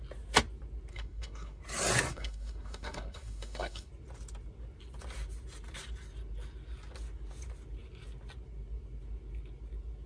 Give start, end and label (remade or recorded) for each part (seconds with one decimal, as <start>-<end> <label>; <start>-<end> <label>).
0.0-0.9 recorded; 0.9-1.6 remade; 1.6-2.1 recorded; 2.1-3.9 remade; 3.9-10.1 recorded